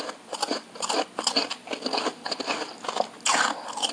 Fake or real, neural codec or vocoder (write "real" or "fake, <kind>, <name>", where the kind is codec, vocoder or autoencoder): real